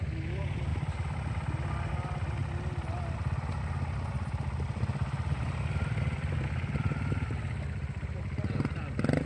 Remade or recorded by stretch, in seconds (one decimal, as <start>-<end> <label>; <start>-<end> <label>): 0.0-9.3 recorded